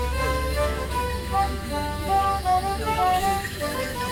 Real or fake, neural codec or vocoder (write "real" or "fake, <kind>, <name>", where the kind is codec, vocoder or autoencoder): fake, autoencoder, DAC-VAE